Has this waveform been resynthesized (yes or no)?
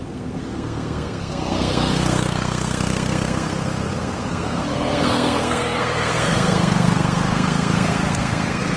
yes